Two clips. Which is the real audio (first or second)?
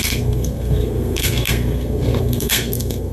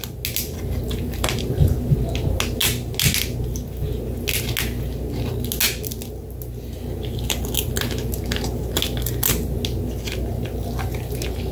second